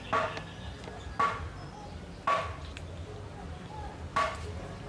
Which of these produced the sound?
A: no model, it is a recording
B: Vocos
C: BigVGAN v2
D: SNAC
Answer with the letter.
A